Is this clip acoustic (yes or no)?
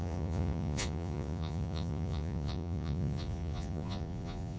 no